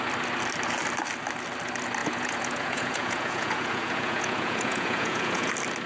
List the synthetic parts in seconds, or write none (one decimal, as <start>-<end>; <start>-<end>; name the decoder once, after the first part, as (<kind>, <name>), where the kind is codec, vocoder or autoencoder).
2.0-5.5 (vocoder, Vocos)